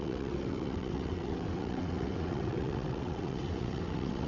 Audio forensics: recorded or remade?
remade